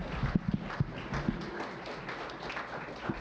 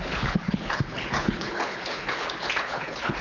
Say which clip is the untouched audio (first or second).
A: first